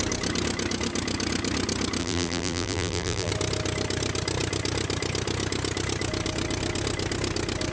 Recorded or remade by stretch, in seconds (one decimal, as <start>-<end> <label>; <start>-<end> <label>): 0.0-2.0 recorded; 2.0-3.3 remade; 3.3-7.7 recorded